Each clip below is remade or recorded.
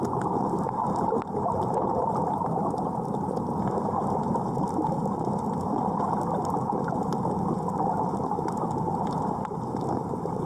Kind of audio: recorded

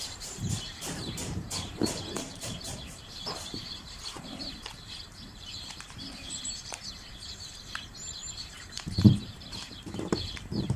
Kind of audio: remade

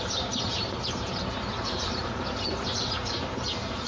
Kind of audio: remade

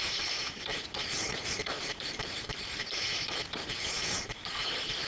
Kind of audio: remade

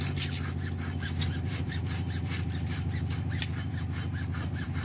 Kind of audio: remade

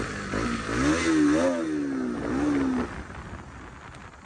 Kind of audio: recorded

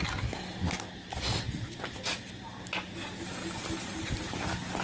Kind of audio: recorded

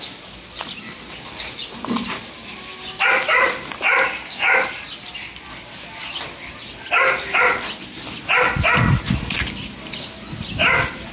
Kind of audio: recorded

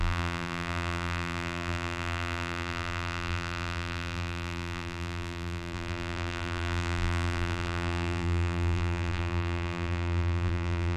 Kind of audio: remade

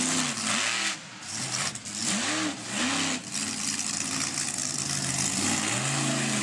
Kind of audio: recorded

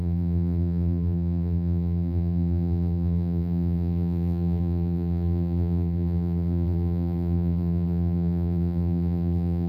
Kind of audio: remade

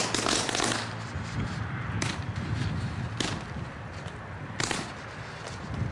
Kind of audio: remade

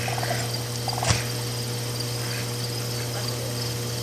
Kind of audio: remade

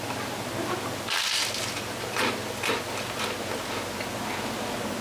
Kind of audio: recorded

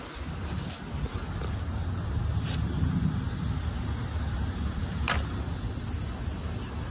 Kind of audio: recorded